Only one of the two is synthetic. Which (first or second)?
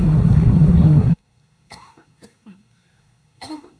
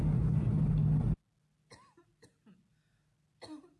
first